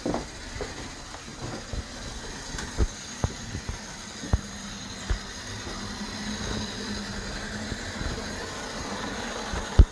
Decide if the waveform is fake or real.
real